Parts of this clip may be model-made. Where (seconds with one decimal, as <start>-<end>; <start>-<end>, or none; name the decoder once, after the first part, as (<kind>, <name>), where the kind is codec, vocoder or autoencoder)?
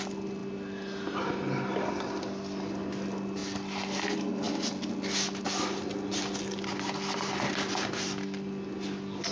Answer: none